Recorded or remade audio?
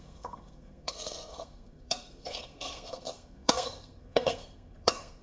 remade